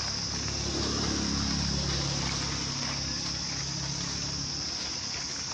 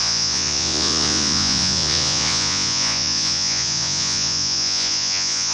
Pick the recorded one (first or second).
first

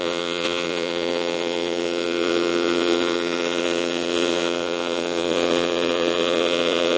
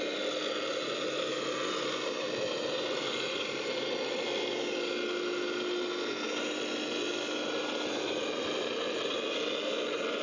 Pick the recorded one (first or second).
second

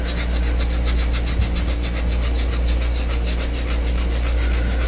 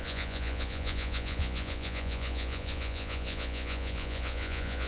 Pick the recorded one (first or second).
first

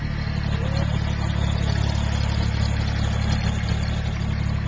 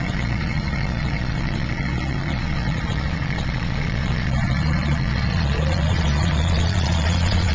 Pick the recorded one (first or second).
first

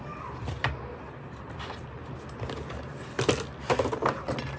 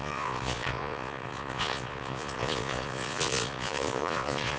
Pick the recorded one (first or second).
first